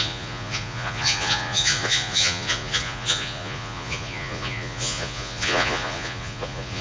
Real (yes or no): no